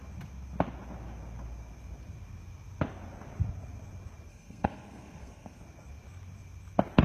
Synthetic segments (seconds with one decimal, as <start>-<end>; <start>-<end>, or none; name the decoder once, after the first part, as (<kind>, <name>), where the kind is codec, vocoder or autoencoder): 4.3-5.6 (codec, SNAC)